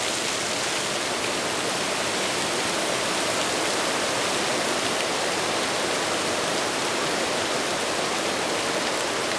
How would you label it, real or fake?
real